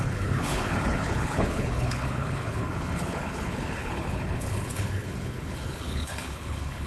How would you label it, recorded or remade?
remade